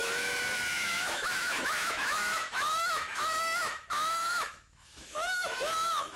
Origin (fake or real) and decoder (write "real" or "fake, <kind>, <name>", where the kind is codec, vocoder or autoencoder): fake, autoencoder, DAC-VAE